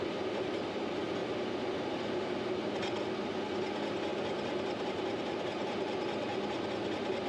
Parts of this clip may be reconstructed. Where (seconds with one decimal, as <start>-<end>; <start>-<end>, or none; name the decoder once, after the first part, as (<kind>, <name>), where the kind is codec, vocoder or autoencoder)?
4.1-4.9 (vocoder, BigVGAN v2)